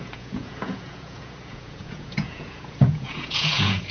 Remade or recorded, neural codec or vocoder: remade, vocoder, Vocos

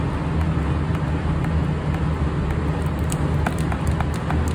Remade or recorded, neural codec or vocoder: recorded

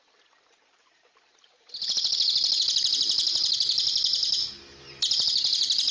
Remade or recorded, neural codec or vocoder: recorded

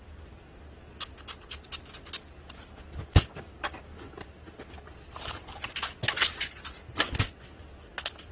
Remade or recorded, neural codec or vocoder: recorded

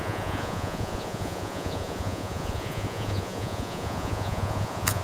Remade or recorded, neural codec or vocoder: remade, vocoder, Vocos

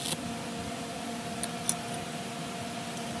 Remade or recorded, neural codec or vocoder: recorded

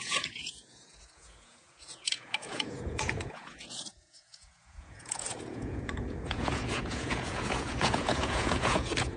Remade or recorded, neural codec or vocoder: remade, vocoder, Vocos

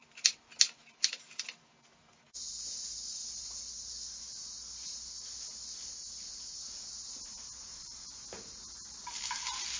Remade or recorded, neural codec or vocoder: recorded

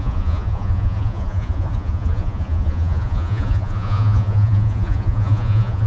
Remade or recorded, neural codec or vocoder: remade, vocoder, Vocos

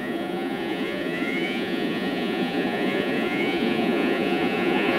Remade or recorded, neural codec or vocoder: remade, vocoder, Vocos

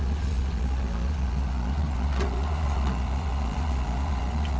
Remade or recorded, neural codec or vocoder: remade, vocoder, Vocos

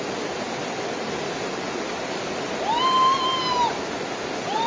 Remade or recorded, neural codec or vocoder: recorded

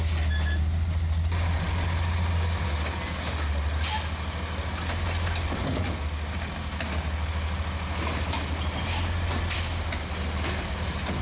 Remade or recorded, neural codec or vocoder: recorded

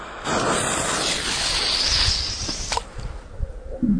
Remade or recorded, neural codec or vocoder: recorded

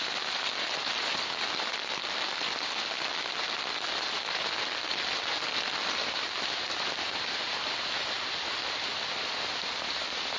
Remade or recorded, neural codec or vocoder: recorded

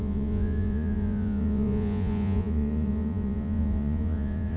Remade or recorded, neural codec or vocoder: remade, vocoder, Vocos